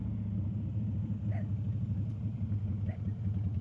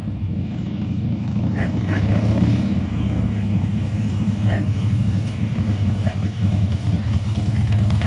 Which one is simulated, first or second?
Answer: second